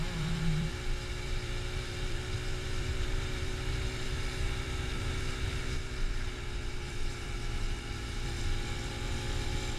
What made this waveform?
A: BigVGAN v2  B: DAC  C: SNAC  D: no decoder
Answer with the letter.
A